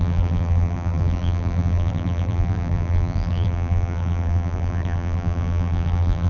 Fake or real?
fake